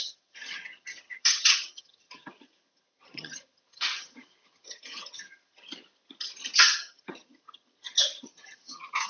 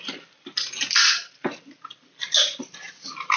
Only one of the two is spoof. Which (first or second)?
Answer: first